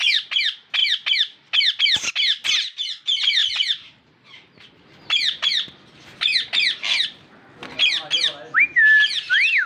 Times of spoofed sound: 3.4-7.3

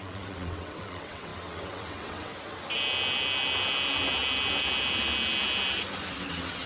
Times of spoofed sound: 0.0-2.3; 6.3-6.7

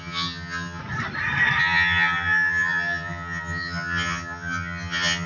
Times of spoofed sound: 0.0-0.8; 1.6-5.3